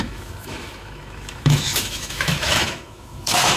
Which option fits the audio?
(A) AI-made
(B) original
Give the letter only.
A